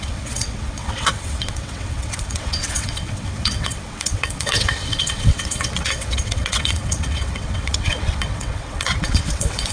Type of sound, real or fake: fake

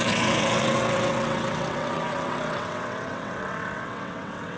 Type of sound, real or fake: fake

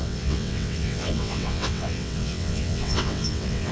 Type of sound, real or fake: fake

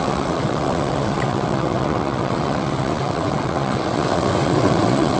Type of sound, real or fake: fake